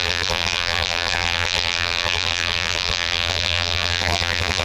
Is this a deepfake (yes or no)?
yes